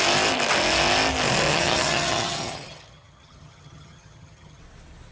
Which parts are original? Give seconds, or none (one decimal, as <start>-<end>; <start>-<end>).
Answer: 0.0-1.5; 4.6-5.1

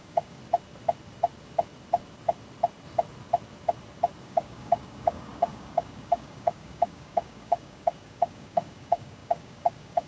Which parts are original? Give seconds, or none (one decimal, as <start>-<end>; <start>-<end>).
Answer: 0.4-4.2